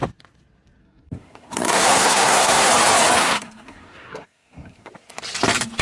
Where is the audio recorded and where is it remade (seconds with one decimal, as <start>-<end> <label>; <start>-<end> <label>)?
0.0-0.8 recorded; 0.8-2.7 remade; 2.7-3.2 recorded; 3.2-4.9 remade; 4.9-5.8 recorded